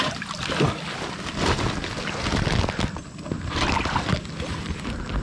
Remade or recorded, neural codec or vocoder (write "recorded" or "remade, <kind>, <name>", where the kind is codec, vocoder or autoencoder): recorded